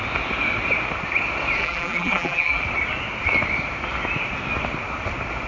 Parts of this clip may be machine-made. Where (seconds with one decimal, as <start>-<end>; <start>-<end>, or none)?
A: 1.6-2.6